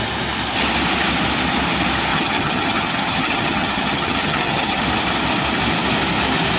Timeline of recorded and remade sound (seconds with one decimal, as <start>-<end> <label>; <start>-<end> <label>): 0.0-2.1 recorded; 2.1-4.8 remade; 4.8-6.6 recorded